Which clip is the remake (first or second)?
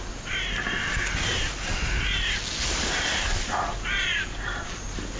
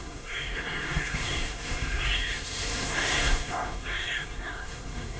second